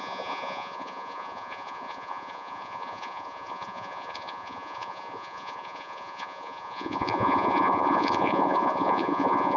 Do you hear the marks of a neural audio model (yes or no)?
yes